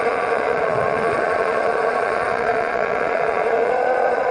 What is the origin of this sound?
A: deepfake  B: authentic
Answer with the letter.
A